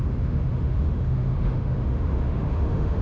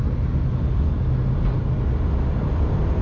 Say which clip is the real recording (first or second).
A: second